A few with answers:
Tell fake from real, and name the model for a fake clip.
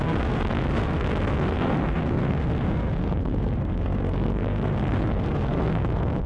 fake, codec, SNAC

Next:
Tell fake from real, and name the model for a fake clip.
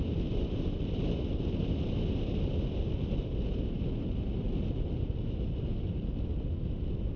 real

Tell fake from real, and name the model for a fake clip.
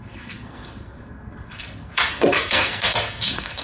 fake, codec, SNAC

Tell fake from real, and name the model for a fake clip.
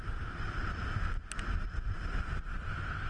real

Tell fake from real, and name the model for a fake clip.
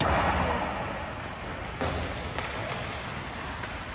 real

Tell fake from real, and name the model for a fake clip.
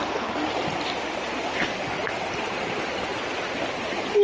real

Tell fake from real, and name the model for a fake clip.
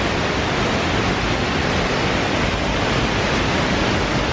real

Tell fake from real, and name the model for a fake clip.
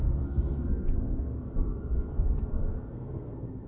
fake, codec, SNAC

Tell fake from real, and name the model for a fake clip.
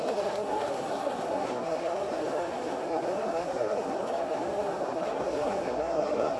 fake, codec, SNAC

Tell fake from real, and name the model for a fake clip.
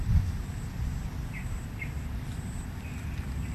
real